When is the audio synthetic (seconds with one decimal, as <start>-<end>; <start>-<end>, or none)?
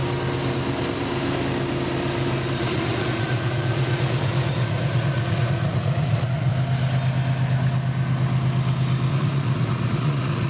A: 2.6-6.5; 9.1-10.5